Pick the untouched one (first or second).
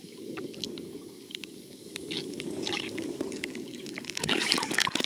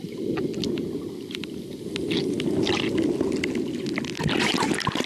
second